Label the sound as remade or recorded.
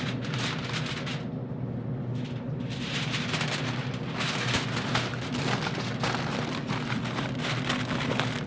recorded